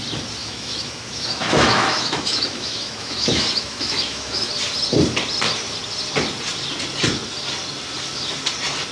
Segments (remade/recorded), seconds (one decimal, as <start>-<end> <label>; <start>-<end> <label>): 0.0-0.4 recorded; 0.4-4.5 remade; 4.5-8.9 recorded